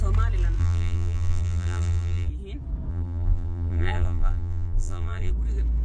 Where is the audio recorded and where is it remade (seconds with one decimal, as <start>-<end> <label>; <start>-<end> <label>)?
0.0-0.6 recorded; 0.6-2.3 remade; 2.3-2.9 recorded; 2.9-5.3 remade; 5.3-5.8 recorded